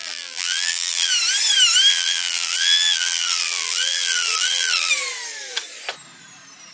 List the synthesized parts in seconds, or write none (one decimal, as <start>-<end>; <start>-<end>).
0.0-1.1; 1.9-4.9